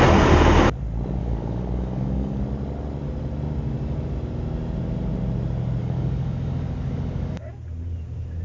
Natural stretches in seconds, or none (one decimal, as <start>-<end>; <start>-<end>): 0.0-1.2; 2.4-5.8; 7.4-8.4